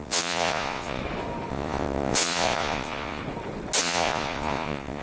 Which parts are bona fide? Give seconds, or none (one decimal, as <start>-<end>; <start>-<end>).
1.0-1.5; 3.2-3.8